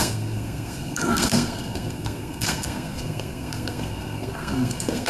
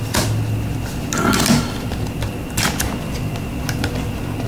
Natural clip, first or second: second